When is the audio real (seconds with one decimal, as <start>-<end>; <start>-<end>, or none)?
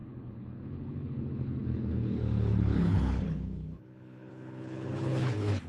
none